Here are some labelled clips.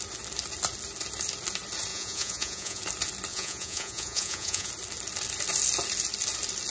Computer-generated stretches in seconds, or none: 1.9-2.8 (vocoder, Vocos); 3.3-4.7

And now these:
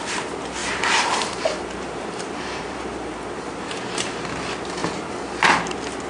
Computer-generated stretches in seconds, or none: 0.6-4.3 (vocoder, BigVGAN v2)

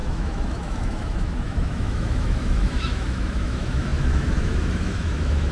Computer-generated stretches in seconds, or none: 0.0-5.5 (autoencoder, DAC-VAE)

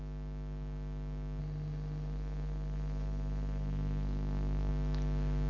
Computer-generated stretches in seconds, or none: 1.4-4.7 (codec, SNAC)

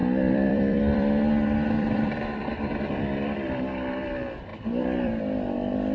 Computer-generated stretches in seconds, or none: 0.0-3.5 (vocoder, BigVGAN v2); 4.5-5.2

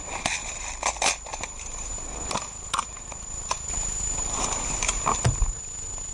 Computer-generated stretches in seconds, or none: 1.3-5.0 (vocoder, BigVGAN v2)